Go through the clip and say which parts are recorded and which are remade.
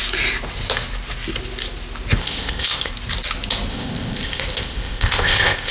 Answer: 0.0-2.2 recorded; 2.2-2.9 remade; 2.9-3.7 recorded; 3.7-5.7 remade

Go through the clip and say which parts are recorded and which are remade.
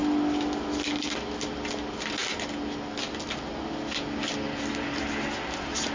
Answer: 0.0-5.9 recorded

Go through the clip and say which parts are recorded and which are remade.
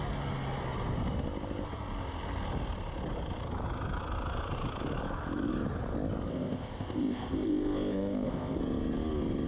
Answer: 0.0-6.3 recorded; 6.3-8.6 remade; 8.6-9.5 recorded